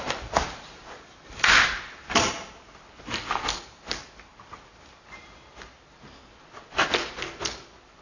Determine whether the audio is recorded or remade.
recorded